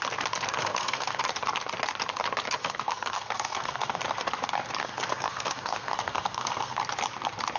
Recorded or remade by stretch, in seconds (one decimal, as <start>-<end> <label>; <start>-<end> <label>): 0.0-0.6 recorded; 0.6-1.2 remade; 1.2-2.6 recorded; 2.6-4.0 remade; 4.0-4.8 recorded; 4.8-6.8 remade; 6.8-7.6 recorded